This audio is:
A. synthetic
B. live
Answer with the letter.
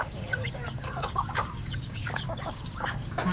A